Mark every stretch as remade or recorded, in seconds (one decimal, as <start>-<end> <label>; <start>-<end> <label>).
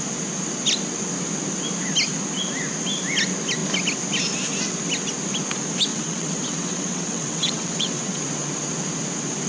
0.0-5.9 recorded; 5.9-8.2 remade; 8.2-9.5 recorded